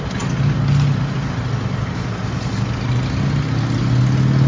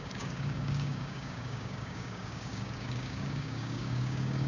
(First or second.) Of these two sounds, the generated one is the second